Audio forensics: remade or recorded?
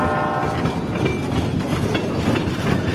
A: recorded